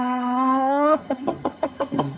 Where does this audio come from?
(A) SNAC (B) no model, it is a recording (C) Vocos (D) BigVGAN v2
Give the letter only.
A